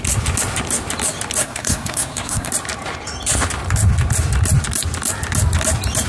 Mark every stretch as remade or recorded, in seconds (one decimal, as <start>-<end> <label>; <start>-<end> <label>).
0.0-1.4 recorded; 1.4-2.5 remade; 2.5-6.1 recorded